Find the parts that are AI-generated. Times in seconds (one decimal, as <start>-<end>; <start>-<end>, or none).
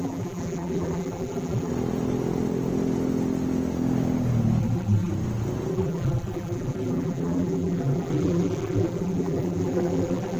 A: 0.0-1.7; 4.6-5.1; 5.7-10.4